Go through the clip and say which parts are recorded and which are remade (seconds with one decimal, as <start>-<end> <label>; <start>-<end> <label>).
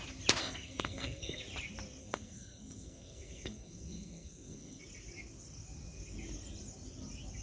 0.0-0.4 recorded; 0.4-1.4 remade; 1.4-2.0 recorded; 2.0-4.8 remade; 4.8-7.4 recorded